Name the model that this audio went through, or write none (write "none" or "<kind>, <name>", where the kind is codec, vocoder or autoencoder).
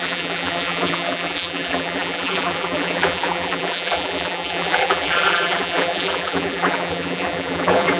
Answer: vocoder, BigVGAN v2